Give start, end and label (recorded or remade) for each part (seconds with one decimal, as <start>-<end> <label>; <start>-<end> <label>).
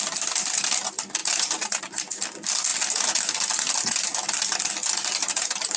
0.0-1.2 recorded; 1.2-1.8 remade; 1.8-5.8 recorded